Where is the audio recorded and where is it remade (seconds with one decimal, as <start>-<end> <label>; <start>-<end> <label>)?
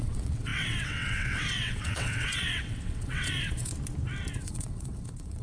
0.0-3.7 remade; 3.7-4.3 recorded; 4.3-5.4 remade